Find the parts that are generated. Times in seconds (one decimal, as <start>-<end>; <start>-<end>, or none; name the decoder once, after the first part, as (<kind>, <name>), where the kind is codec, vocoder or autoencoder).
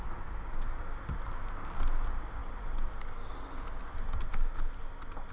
none